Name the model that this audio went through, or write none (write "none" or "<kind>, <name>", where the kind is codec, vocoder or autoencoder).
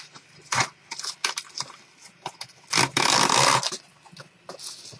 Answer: none